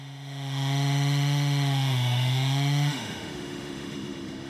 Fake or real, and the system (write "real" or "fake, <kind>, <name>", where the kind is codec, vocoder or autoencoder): fake, autoencoder, DAC-VAE